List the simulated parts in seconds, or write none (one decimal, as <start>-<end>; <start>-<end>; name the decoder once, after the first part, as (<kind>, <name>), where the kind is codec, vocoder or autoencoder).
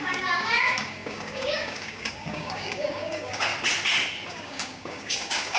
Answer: 0.0-3.5 (codec, DAC); 4.3-5.6